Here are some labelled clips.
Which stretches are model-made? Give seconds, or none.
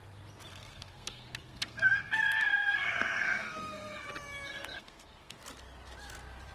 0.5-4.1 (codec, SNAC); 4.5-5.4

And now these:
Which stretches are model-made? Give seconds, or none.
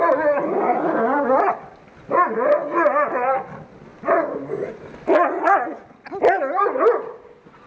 none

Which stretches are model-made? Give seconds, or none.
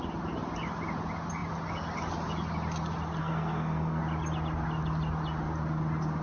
3.2-4.0 (codec, SNAC)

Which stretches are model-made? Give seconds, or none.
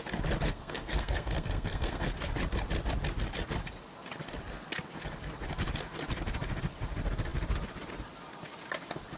0.5-2.1 (codec, SNAC)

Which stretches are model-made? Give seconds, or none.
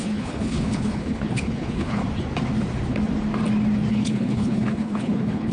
0.0-2.0 (codec, HILCodec); 3.9-5.5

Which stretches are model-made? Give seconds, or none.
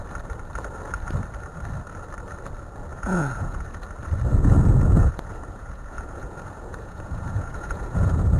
2.9-3.8 (vocoder, Vocos); 4.3-8.4